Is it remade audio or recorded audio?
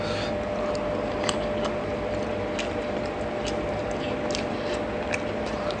recorded